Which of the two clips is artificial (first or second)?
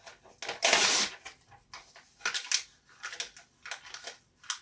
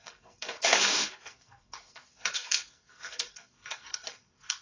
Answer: second